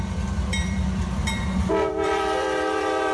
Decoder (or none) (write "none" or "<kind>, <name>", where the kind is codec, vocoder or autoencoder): vocoder, BigVGAN v2